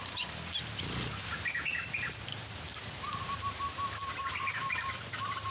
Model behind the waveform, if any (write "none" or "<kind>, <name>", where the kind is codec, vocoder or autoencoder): none